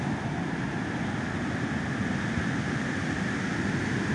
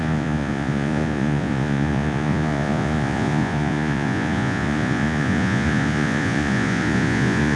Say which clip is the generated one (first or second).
second